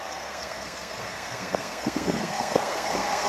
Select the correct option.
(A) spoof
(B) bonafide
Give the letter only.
A